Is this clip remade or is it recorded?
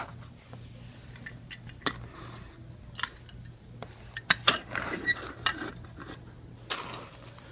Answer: recorded